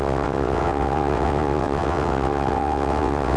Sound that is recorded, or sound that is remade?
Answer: remade